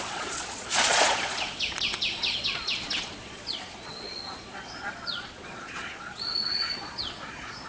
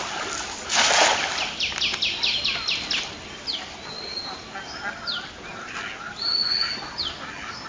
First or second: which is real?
second